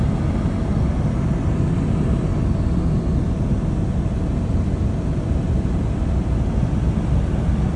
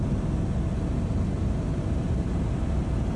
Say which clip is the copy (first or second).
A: first